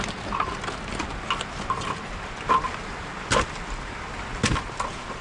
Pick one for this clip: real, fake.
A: real